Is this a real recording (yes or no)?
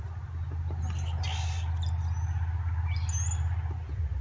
yes